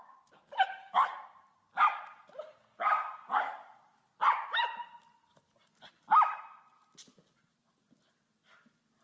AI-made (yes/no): no